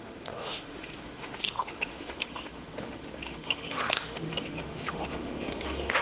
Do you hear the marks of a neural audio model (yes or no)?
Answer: yes